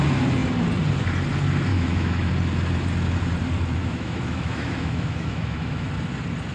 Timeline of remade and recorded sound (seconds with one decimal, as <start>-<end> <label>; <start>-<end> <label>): 0.0-1.7 recorded; 1.7-2.3 remade; 2.3-3.8 recorded; 3.8-5.9 remade; 5.9-6.5 recorded